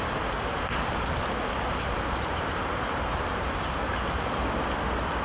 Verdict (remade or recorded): recorded